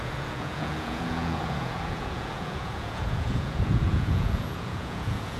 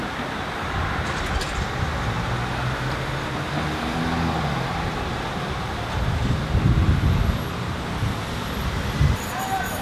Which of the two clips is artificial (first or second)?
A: first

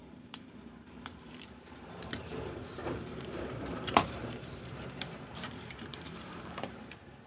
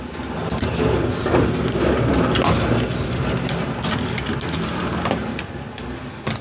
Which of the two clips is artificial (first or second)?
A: first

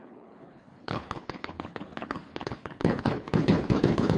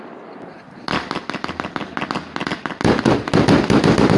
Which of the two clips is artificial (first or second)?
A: first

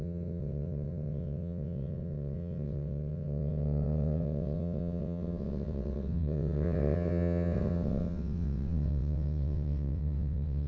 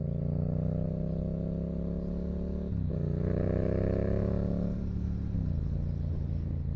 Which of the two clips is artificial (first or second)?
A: first